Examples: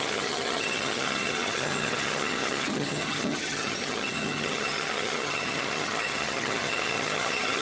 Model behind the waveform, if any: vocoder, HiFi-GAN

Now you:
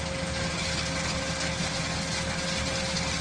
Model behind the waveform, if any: none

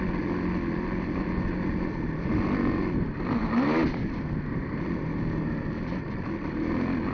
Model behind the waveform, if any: none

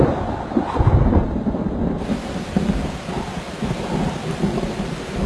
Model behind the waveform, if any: none